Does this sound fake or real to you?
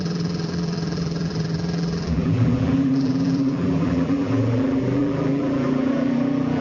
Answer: fake